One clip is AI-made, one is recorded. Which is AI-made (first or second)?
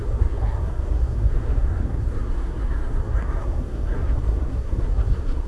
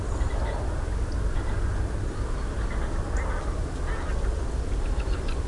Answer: first